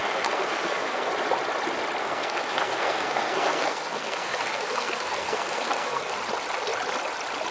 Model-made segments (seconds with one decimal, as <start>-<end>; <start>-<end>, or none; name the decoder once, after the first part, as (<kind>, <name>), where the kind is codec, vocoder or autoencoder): 0.0-1.1 (codec, SNAC); 2.0-6.1